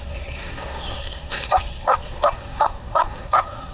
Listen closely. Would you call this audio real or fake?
fake